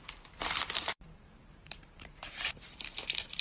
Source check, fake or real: fake